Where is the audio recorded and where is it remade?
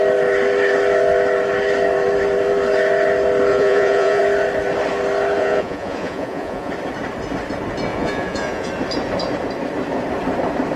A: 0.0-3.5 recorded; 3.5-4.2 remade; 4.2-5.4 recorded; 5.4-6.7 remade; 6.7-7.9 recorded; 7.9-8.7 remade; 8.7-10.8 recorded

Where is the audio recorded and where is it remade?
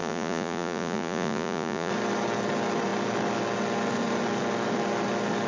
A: 0.0-1.9 remade; 1.9-5.5 recorded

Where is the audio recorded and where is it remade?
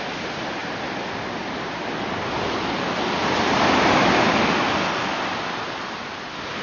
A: 0.0-6.6 recorded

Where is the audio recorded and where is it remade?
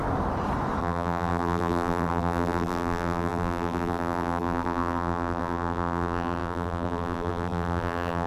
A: 0.0-0.8 recorded; 0.8-8.3 remade